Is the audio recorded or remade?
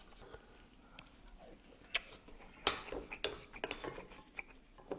recorded